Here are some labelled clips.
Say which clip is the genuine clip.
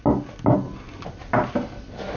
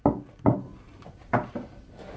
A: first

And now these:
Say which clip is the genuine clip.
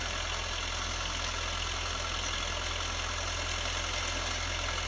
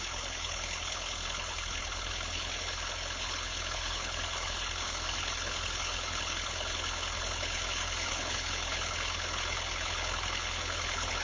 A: first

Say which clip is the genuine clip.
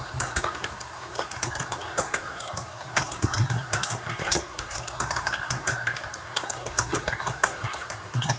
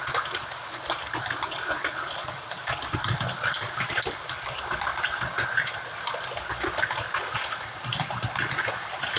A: second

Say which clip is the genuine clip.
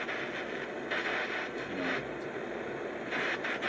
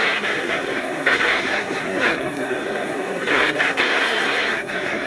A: first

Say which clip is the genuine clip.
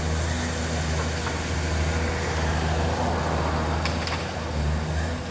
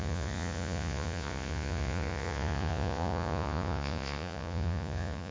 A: first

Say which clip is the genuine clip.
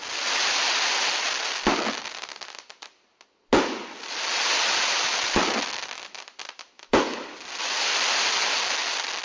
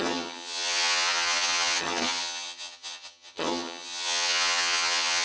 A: first